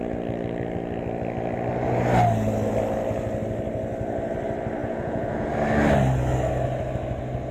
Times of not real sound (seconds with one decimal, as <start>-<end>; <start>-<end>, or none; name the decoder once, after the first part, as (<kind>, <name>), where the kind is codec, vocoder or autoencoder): 4.8-5.5 (vocoder, Vocos)

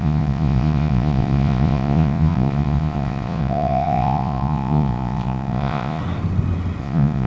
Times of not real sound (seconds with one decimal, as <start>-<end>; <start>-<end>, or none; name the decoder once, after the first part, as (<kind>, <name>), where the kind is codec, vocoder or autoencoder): 0.0-6.0 (vocoder, Vocos); 6.8-7.3

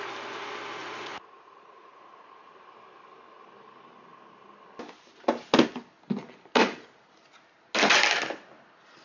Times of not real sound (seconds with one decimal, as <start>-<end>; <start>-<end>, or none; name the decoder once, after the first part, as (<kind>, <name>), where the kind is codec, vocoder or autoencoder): 0.8-2.3 (vocoder, Vocos)

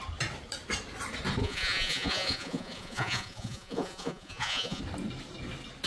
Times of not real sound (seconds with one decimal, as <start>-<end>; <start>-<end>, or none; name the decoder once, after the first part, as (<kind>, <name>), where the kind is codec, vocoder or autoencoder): 1.4-4.8 (vocoder, Vocos)

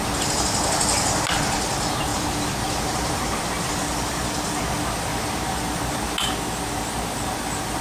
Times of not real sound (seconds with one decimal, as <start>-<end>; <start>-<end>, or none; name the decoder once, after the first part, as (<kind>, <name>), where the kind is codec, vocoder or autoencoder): none

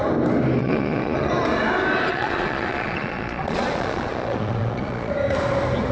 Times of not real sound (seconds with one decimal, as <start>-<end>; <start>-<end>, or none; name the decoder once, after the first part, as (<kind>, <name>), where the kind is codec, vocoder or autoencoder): 0.6-1.3 (vocoder, Vocos); 2.1-5.1

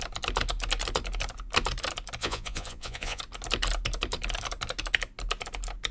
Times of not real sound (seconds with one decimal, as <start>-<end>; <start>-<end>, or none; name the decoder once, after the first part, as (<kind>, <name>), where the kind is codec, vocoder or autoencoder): 2.2-3.2 (vocoder, Vocos)